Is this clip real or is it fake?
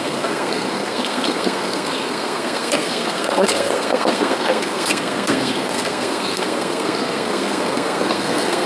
fake